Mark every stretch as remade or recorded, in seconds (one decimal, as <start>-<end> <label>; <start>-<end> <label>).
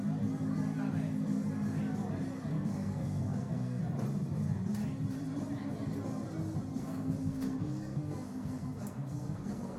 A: 0.0-2.5 recorded; 2.5-3.8 remade; 3.8-6.7 recorded; 6.7-9.8 remade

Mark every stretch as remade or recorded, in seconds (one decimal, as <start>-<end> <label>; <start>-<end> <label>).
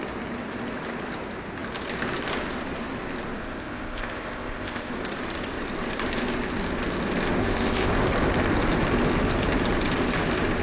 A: 0.0-3.4 recorded; 3.4-4.9 remade; 4.9-7.4 recorded; 7.4-7.9 remade; 7.9-10.6 recorded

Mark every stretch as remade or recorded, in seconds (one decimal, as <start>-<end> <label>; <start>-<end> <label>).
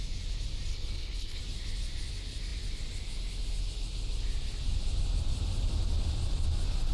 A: 0.0-0.7 recorded; 0.7-1.4 remade; 1.4-6.9 recorded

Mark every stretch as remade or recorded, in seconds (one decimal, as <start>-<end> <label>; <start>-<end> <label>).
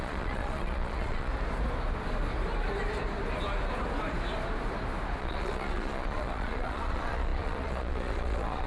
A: 0.0-1.3 remade; 1.3-5.2 recorded; 5.2-8.7 remade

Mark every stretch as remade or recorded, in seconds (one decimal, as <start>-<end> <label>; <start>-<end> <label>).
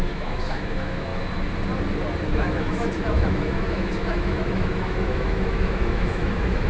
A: 0.0-1.1 remade; 1.1-2.3 recorded; 2.3-6.7 remade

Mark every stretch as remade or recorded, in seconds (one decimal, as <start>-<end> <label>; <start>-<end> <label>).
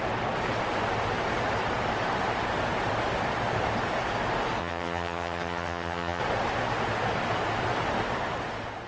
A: 0.0-4.6 recorded; 4.6-6.2 remade; 6.2-8.9 recorded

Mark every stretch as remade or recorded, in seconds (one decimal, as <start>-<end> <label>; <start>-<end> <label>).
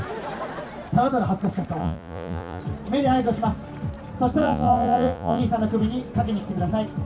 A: 0.0-1.8 recorded; 1.8-2.6 remade; 2.6-4.4 recorded; 4.4-5.4 remade; 5.4-7.1 recorded